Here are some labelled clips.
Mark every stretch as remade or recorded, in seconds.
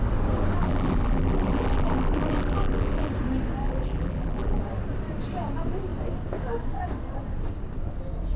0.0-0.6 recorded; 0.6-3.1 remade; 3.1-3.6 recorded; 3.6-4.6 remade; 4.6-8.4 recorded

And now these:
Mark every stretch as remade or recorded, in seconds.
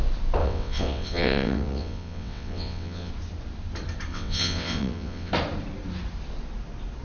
0.0-0.4 recorded; 0.4-3.1 remade; 3.1-4.1 recorded; 4.1-5.3 remade; 5.3-7.0 recorded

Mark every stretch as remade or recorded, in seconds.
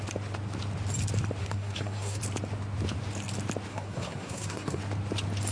0.0-1.4 recorded; 1.4-2.2 remade; 2.2-3.7 recorded; 3.7-4.8 remade; 4.8-5.5 recorded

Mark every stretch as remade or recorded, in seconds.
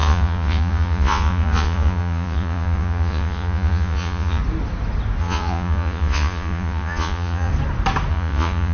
0.0-4.4 remade; 4.4-5.2 recorded; 5.2-7.5 remade; 7.5-8.1 recorded; 8.1-8.7 remade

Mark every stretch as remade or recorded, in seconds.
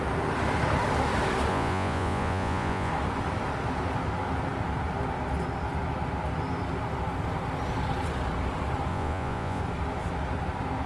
0.0-1.5 recorded; 1.5-2.9 remade; 2.9-8.9 recorded; 8.9-9.6 remade; 9.6-10.9 recorded